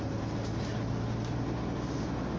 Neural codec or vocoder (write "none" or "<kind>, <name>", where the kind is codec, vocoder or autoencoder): none